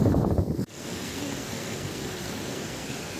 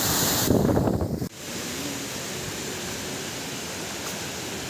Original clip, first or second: second